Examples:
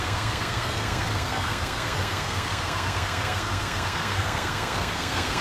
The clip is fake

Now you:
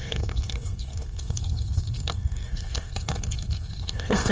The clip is fake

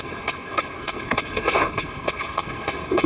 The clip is fake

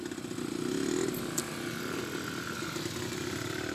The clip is real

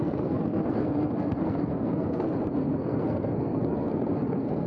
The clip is fake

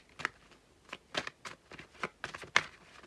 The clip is real